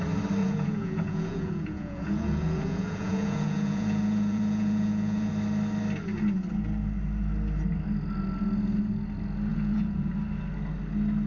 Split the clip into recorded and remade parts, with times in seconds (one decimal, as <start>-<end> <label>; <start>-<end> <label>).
0.0-0.4 recorded; 0.4-5.3 remade; 5.3-9.5 recorded; 9.5-10.1 remade; 10.1-11.3 recorded